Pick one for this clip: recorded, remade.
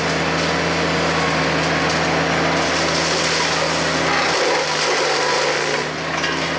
recorded